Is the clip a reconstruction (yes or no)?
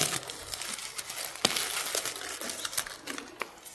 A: no